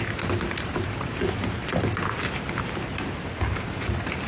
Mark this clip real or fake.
real